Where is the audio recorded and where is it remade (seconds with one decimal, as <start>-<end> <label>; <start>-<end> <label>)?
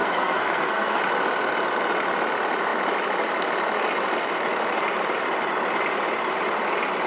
0.0-1.0 remade; 1.0-7.1 recorded